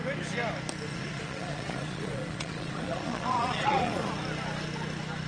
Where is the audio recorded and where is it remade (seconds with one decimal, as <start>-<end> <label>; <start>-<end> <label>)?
0.0-0.9 recorded; 0.9-4.1 remade; 4.1-5.3 recorded